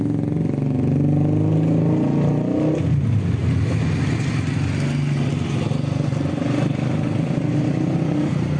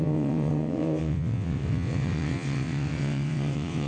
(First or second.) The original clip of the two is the first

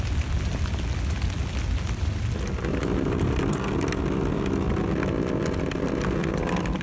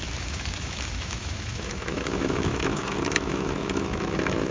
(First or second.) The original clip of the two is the first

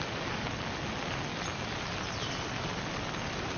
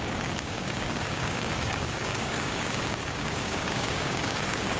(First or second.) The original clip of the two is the first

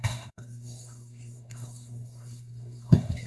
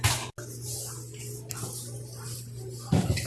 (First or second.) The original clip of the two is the second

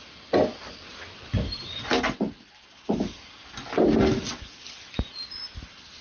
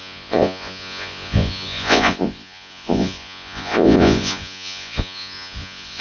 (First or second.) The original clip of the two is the first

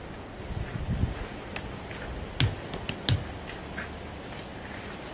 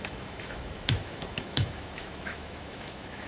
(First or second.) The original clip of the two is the first